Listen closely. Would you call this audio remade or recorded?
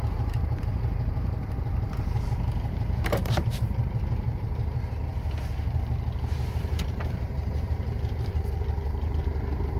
remade